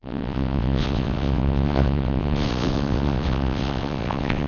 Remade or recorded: remade